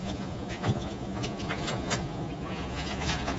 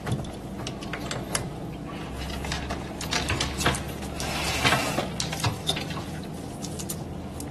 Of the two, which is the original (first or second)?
second